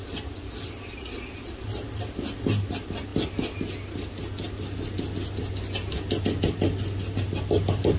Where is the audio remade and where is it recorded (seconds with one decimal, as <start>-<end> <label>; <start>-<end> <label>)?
0.0-8.0 recorded